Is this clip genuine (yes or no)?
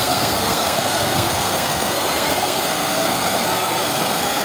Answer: no